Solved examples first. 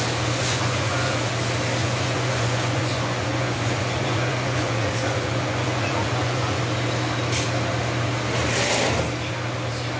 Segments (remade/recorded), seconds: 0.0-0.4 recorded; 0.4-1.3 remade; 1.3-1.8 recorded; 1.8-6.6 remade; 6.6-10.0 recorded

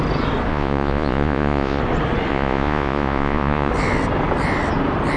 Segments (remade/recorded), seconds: 0.0-0.5 recorded; 0.5-1.8 remade; 1.8-2.3 recorded; 2.3-3.7 remade; 3.7-5.2 recorded

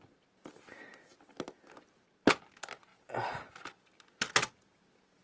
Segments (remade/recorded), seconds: 0.0-5.2 recorded

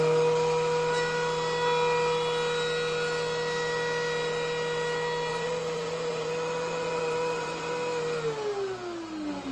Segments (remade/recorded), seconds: 0.0-5.3 recorded; 5.3-7.7 remade; 7.7-9.5 recorded

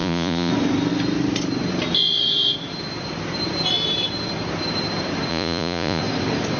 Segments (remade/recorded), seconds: 0.0-0.5 remade; 0.5-5.3 recorded; 5.3-6.0 remade; 6.0-6.6 recorded

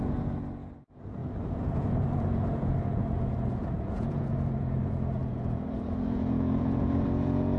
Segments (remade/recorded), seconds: 0.0-7.6 remade

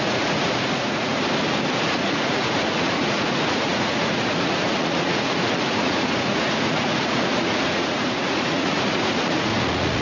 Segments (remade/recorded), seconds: 0.0-1.1 remade; 1.1-1.9 recorded; 1.9-10.0 remade

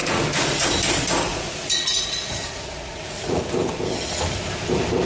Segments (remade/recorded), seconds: 0.0-0.7 remade; 0.7-1.3 recorded; 1.3-3.4 remade; 3.4-5.1 recorded